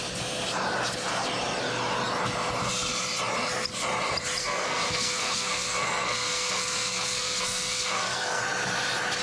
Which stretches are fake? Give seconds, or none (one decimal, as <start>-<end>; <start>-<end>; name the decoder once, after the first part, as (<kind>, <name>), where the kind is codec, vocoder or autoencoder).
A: 4.4-8.4 (codec, SNAC)